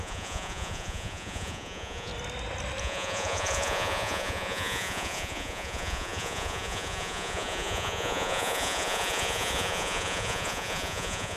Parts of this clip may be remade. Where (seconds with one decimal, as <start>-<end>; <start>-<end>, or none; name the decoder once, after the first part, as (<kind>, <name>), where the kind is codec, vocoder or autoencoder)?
0.0-2.1 (vocoder, Vocos); 2.8-11.4